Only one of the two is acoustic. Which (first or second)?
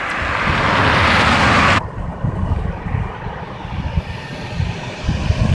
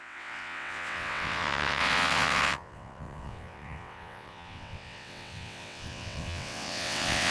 first